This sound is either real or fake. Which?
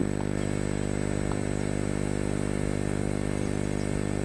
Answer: real